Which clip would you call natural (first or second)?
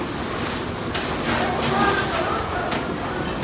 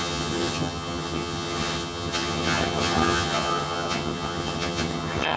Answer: first